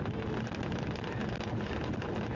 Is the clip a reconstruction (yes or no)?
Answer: no